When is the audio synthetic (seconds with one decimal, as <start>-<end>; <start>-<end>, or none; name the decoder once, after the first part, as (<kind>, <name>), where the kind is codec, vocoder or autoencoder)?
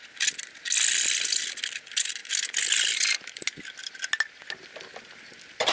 none